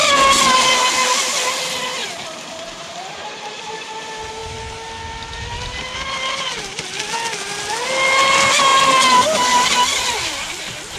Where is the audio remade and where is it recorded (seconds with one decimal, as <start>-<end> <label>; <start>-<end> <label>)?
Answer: 0.0-1.9 recorded; 1.9-3.7 remade; 3.7-11.0 recorded